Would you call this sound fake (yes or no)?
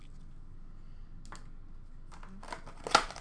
no